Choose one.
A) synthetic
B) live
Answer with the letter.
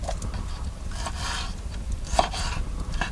B